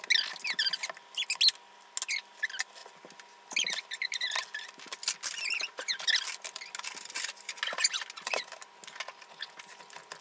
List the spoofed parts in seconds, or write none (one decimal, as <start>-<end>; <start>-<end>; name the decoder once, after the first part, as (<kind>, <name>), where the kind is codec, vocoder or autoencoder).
none